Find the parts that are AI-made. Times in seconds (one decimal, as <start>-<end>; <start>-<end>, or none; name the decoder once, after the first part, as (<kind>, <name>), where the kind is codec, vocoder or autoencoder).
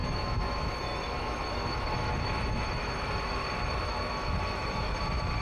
0.0-3.1 (autoencoder, DAC-VAE); 3.6-5.0